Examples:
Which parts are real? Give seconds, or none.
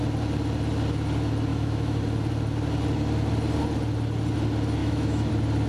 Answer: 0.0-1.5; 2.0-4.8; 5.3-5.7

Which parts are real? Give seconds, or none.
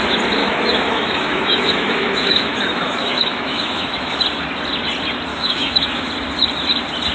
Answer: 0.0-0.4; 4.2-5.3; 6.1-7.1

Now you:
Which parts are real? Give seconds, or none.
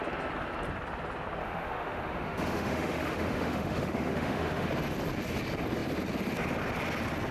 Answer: 0.0-1.4; 4.7-7.3